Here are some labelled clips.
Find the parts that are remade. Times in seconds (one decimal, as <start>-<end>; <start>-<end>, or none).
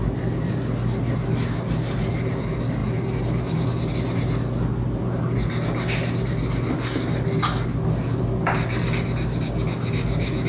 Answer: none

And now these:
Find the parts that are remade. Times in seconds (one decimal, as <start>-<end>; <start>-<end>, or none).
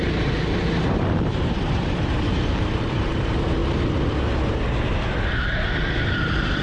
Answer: 0.0-3.6; 6.1-6.6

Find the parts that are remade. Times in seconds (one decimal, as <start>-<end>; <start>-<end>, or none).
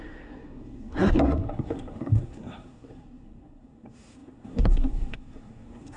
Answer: 0.0-6.0